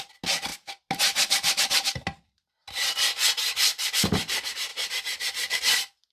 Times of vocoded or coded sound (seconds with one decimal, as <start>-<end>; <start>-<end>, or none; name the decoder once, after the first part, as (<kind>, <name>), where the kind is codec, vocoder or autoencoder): 0.5-2.5 (vocoder, BigVGAN v2); 4.7-5.6